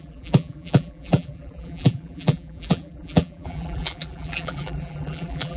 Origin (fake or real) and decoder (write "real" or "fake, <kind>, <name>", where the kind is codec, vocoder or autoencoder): fake, vocoder, BigVGAN v2